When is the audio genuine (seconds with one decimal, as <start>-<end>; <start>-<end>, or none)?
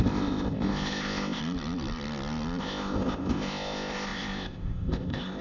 1.4-2.6